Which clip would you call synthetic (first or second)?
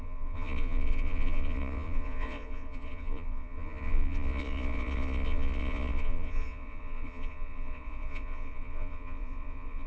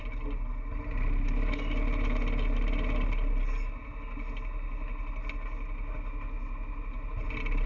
first